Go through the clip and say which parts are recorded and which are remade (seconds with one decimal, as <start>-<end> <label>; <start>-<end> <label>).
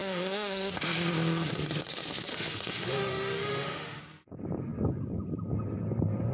0.0-0.7 remade; 0.7-2.3 recorded; 2.3-4.0 remade; 4.0-6.3 recorded